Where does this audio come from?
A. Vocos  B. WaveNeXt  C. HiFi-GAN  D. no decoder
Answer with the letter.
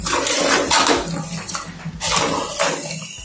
D